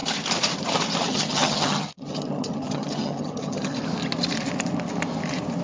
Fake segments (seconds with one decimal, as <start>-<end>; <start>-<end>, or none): 1.1-3.8